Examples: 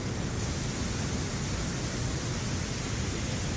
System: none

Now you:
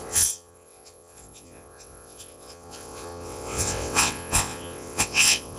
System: vocoder, WaveNeXt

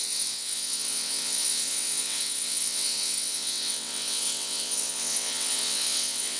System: vocoder, WaveNeXt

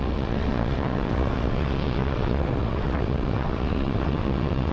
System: vocoder, WaveNeXt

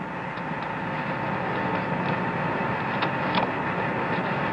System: none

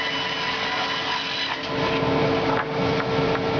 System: none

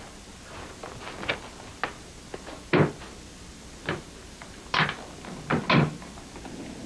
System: none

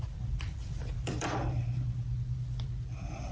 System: none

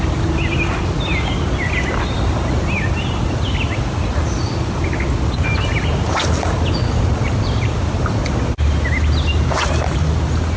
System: none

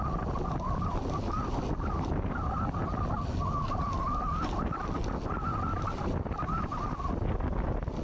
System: none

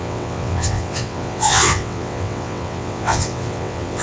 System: vocoder, WaveNeXt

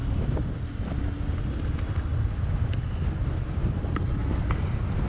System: none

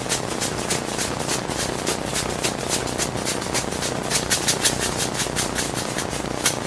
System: none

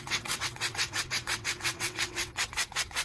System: vocoder, WaveNeXt